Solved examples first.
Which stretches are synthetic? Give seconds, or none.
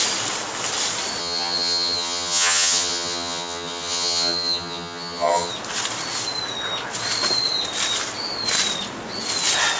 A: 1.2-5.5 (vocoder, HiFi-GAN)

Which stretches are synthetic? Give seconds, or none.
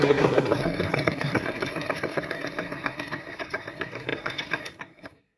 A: 0.0-5.4 (codec, SNAC)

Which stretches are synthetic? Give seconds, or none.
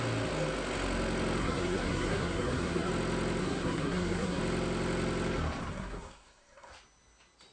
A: 1.4-2.9 (codec, SNAC); 3.4-4.4; 5.7-6.7